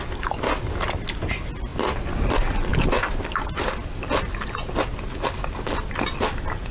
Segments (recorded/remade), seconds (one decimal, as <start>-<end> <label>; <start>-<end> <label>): 0.0-6.7 recorded